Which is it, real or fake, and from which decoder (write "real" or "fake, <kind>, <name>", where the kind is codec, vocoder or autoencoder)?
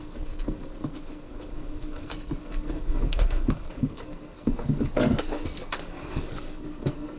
fake, codec, SNAC